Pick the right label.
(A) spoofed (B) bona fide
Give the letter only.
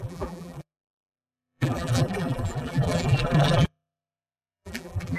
A